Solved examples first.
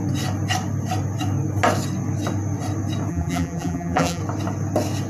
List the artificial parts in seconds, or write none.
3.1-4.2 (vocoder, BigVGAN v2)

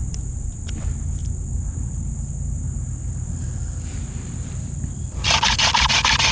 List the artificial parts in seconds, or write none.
3.4-6.3 (vocoder, BigVGAN v2)

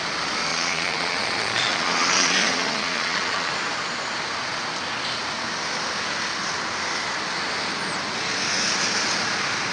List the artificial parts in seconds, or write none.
0.5-3.5 (vocoder, Vocos)

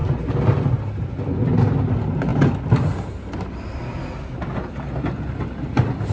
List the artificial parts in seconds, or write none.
none

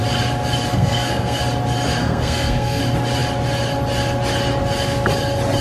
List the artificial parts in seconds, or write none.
0.7-1.4 (codec, SNAC); 2.0-2.8